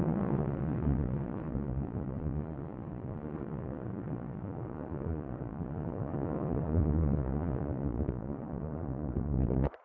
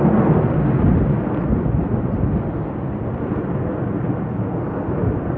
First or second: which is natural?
second